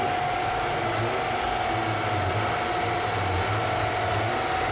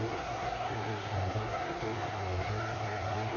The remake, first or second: second